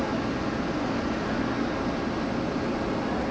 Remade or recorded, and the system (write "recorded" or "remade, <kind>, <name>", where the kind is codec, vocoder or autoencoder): recorded